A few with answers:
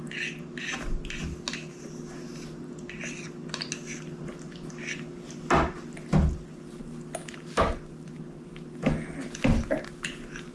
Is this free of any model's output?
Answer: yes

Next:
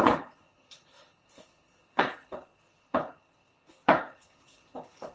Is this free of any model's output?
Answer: no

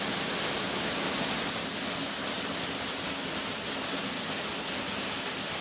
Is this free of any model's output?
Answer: yes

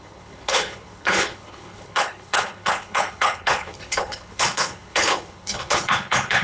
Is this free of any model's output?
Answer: no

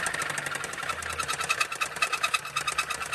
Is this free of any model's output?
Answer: yes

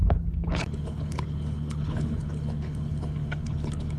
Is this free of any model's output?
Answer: no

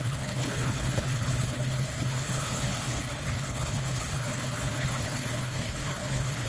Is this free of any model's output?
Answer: no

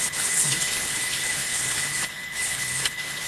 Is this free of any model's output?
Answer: no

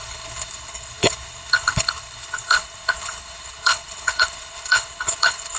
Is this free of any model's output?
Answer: no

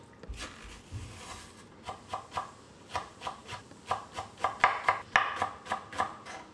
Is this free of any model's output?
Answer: yes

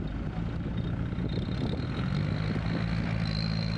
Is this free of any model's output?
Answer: yes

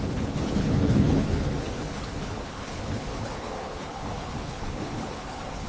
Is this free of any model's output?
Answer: no